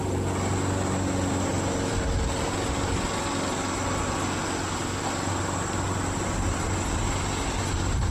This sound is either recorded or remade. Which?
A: recorded